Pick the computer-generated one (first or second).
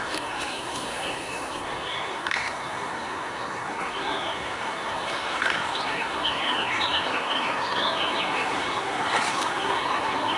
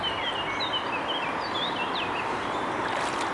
first